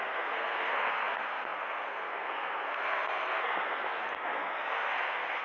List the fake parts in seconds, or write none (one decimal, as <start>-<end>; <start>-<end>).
0.0-5.4